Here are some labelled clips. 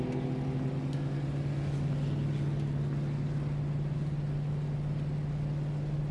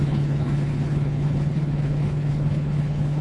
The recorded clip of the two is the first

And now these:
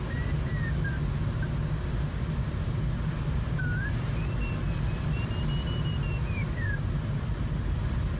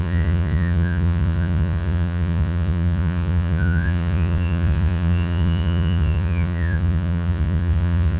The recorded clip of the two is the first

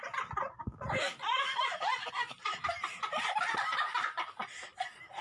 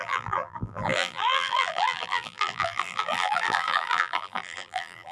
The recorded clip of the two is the first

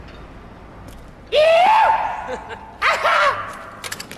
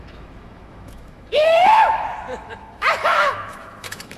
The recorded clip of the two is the first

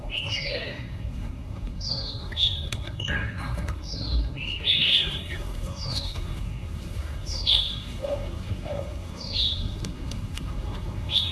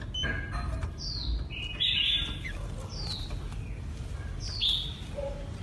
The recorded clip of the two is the second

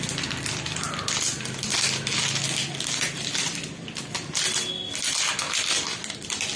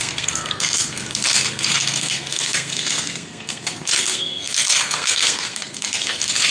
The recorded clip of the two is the first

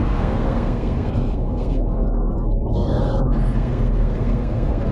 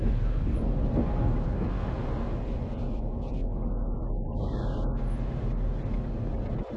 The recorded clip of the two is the second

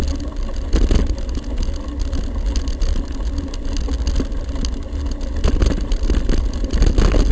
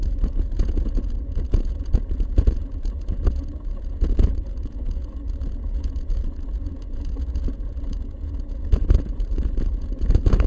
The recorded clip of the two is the first